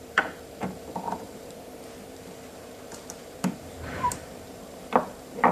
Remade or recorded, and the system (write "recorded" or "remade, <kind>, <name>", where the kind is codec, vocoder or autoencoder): remade, vocoder, BigVGAN v2